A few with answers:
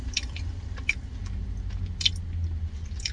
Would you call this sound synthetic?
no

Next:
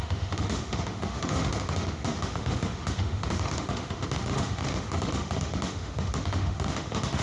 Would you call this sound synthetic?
yes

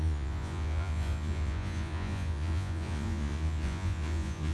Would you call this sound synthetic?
yes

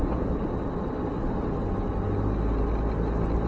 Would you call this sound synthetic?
no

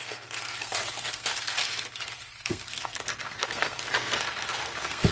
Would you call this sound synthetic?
yes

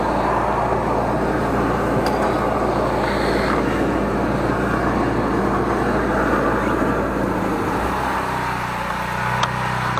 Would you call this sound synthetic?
no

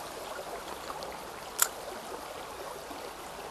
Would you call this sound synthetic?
no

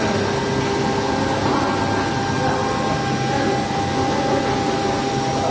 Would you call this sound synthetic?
no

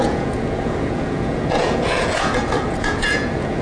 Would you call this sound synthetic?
yes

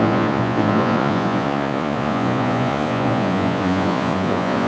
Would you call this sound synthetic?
yes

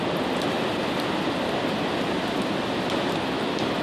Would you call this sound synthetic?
no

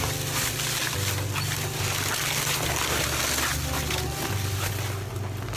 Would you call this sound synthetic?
no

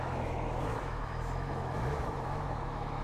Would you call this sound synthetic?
yes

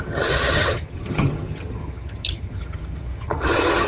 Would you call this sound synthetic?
yes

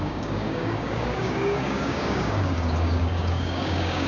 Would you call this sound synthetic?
yes